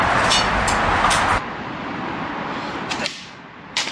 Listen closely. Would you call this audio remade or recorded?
remade